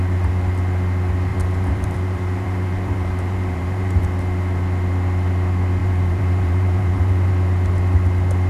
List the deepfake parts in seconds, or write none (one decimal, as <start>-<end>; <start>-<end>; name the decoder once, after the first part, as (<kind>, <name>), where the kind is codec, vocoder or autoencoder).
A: 1.3-4.0 (vocoder, BigVGAN v2); 5.8-7.3